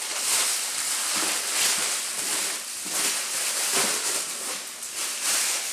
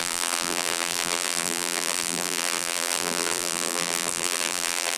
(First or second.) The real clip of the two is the first